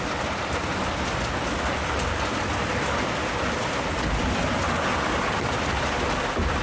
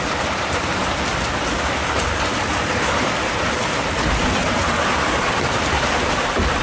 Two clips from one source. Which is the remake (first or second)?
second